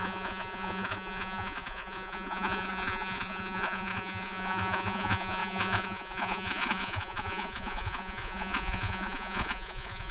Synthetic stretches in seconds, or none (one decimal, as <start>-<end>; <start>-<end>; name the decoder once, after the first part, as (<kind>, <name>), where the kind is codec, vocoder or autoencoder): 0.0-10.1 (vocoder, Vocos)